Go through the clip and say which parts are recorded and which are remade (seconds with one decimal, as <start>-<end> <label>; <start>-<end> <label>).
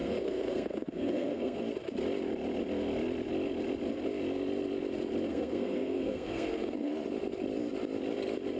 0.0-1.6 remade; 1.6-5.3 recorded; 5.3-6.9 remade; 6.9-8.6 recorded